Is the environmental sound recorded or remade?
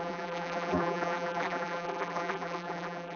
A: remade